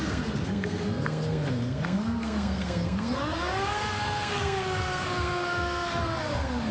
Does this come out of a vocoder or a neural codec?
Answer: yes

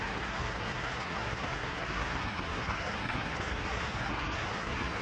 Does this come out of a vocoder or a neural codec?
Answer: yes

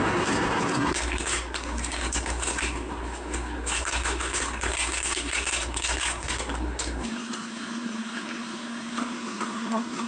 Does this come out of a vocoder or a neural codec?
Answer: yes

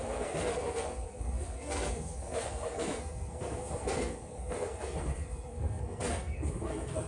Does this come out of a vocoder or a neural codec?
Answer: yes